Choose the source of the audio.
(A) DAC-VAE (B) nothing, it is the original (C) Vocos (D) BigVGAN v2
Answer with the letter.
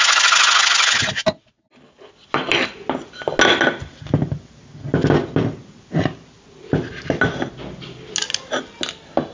B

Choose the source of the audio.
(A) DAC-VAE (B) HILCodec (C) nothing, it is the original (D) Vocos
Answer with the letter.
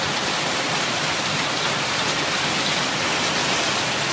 C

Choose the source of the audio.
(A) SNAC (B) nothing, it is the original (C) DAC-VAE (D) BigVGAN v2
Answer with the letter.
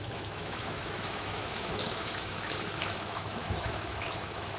C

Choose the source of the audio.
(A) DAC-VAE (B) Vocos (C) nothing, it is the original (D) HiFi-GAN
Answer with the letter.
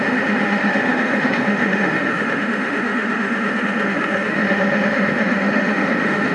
A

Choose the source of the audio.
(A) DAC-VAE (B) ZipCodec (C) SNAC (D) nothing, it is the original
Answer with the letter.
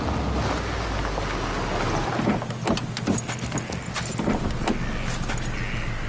D